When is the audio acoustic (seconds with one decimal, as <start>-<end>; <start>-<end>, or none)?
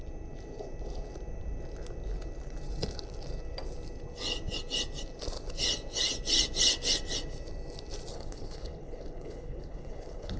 0.0-8.1